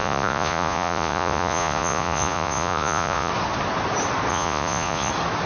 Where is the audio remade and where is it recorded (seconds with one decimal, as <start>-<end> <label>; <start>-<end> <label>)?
0.0-3.3 remade; 3.3-4.3 recorded; 4.3-5.1 remade; 5.1-5.5 recorded